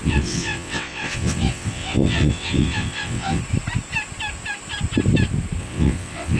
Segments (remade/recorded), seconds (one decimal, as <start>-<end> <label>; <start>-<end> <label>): 0.0-3.4 remade; 3.4-5.6 recorded; 5.6-6.4 remade